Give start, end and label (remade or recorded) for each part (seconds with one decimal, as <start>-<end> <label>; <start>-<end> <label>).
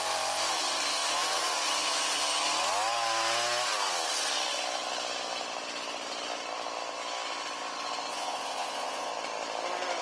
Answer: 0.0-8.1 recorded; 8.1-9.1 remade; 9.1-10.0 recorded